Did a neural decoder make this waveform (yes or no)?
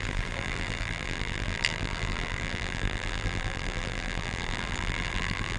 yes